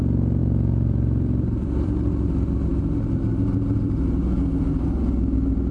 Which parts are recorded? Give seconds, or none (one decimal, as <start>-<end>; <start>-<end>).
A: 0.0-0.4; 1.9-5.7